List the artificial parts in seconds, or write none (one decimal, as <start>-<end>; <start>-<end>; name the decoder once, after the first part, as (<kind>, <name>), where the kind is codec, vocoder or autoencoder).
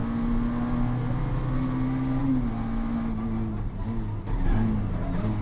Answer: none